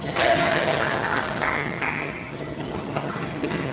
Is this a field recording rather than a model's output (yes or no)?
no